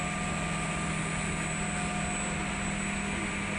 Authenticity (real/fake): real